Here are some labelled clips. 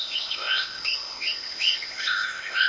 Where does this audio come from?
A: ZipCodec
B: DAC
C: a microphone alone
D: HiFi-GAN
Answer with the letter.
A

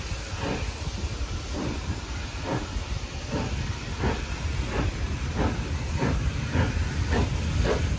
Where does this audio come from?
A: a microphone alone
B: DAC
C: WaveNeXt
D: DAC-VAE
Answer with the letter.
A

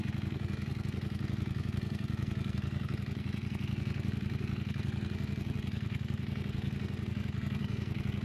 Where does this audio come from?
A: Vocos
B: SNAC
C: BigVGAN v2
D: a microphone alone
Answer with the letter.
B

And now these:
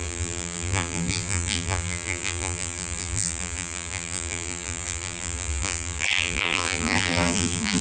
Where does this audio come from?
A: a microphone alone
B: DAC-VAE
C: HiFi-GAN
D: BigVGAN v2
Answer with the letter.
D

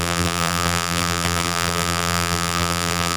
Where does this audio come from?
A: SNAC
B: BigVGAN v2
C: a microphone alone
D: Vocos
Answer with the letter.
B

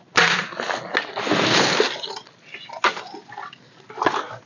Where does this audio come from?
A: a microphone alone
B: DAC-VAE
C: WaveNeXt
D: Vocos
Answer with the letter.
A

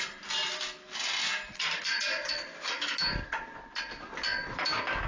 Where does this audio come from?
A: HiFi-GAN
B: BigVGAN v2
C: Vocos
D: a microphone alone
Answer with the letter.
D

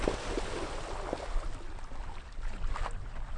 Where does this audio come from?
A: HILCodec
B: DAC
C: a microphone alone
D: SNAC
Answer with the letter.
C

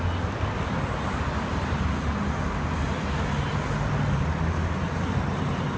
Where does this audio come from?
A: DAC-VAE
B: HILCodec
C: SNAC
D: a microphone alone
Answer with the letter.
D